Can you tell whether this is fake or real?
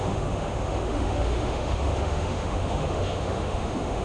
fake